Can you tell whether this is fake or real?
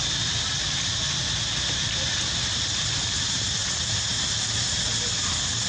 real